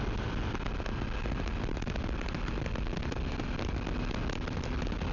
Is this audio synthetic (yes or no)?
no